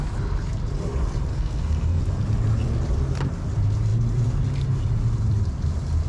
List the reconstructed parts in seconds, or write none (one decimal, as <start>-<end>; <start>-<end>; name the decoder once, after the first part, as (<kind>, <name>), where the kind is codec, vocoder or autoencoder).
1.3-2.0 (codec, SNAC)